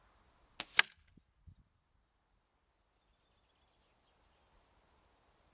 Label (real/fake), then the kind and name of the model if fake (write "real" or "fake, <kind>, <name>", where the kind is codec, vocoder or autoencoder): real